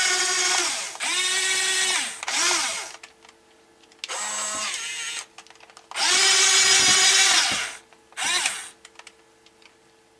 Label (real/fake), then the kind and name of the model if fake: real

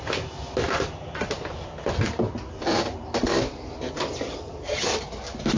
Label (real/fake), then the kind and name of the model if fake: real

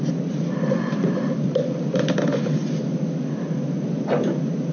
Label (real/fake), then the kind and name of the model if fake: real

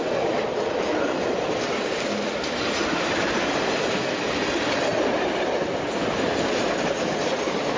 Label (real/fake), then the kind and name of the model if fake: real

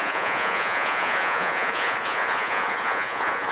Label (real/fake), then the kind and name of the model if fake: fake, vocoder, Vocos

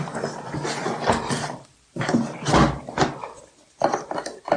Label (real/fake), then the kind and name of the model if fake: real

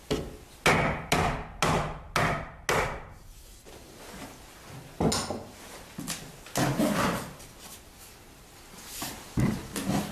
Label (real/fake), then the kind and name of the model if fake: real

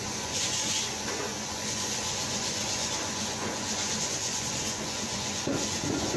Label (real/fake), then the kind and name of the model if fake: fake, vocoder, Vocos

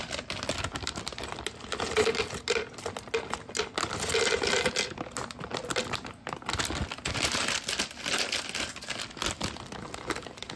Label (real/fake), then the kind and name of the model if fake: real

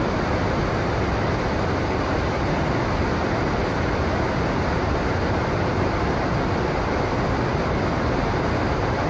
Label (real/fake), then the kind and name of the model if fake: real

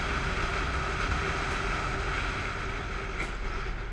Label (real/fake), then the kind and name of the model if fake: real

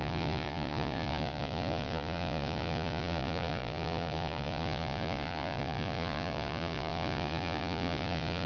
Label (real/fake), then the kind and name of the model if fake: fake, vocoder, Vocos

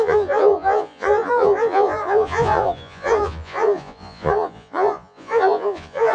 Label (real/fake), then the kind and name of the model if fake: fake, vocoder, Vocos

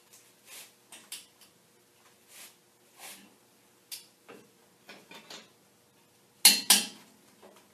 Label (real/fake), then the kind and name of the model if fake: real